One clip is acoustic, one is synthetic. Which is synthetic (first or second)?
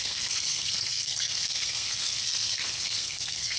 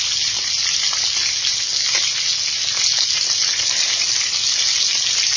first